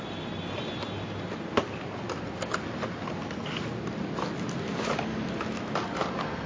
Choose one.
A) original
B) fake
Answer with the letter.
A